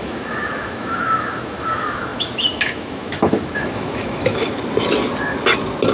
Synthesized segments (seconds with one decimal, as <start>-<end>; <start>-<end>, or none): 0.0-4.6